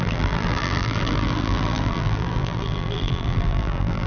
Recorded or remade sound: remade